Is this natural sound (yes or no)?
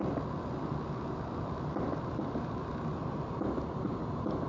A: yes